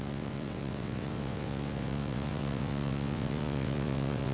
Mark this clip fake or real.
fake